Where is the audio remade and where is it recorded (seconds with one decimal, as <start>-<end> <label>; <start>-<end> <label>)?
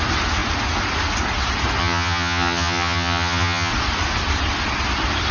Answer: 0.0-1.8 recorded; 1.8-3.7 remade; 3.7-5.3 recorded